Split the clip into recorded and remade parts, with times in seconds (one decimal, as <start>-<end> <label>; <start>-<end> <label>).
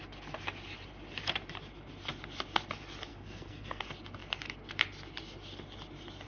0.0-3.1 recorded; 3.1-3.8 remade; 3.8-6.3 recorded